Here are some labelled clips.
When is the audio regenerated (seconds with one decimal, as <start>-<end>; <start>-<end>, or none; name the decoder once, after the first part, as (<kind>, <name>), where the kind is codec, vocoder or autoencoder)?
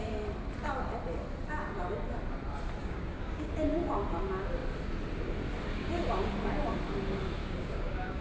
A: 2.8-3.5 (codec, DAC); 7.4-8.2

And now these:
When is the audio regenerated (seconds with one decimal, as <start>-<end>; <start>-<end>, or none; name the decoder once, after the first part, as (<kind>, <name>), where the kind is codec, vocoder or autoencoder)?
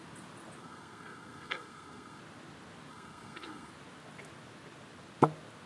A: 0.6-2.2 (codec, SNAC); 2.9-3.7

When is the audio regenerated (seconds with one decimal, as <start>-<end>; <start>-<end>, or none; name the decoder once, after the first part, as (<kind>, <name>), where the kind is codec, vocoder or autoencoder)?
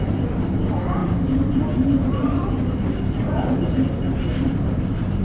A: 1.0-2.8 (vocoder, BigVGAN v2); 4.3-5.2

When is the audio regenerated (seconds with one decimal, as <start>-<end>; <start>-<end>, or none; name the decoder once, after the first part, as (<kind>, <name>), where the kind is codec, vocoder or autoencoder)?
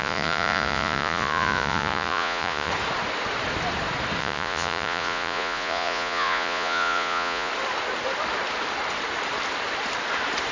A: 0.0-2.7 (vocoder, Vocos); 4.2-7.5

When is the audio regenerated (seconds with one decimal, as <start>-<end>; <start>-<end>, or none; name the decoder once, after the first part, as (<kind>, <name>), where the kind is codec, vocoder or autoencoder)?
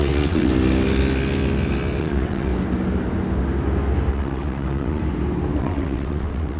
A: 0.0-0.5 (vocoder, WaveNeXt); 2.0-2.5; 4.1-5.0; 5.6-6.6